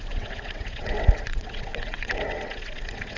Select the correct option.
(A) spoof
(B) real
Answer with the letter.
A